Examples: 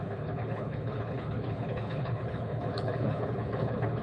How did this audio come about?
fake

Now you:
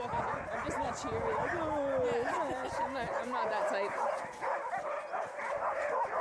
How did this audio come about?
real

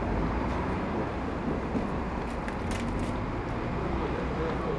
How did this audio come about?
real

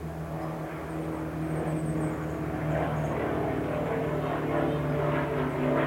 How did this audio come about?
real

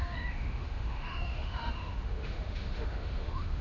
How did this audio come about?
fake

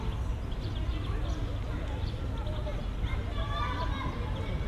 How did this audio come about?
real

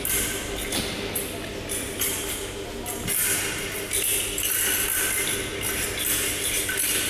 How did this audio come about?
real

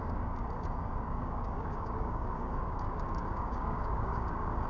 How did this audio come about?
fake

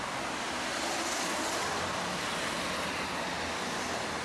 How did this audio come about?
real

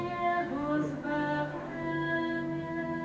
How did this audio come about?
fake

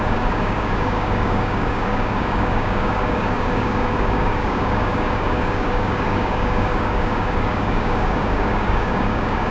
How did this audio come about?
fake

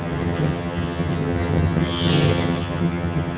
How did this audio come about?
fake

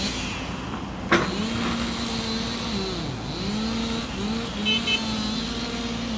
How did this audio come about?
real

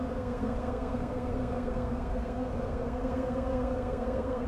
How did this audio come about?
fake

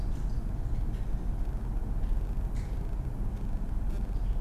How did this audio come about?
real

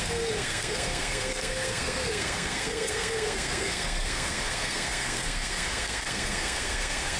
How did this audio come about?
fake